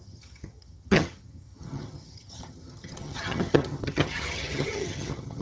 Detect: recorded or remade remade